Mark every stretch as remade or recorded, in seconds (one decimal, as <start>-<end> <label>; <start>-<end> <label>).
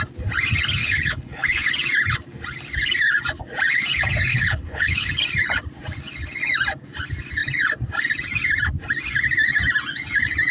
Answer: 0.0-0.8 recorded; 0.8-1.7 remade; 1.7-4.3 recorded; 4.3-5.1 remade; 5.1-10.5 recorded